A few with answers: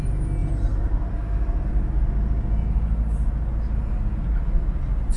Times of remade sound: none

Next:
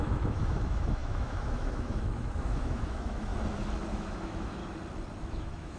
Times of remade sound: 0.0-3.3; 3.9-4.6; 5.2-5.8